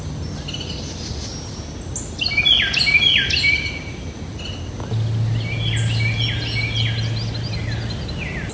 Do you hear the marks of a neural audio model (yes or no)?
no